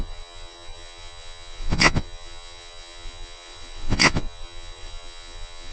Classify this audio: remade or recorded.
remade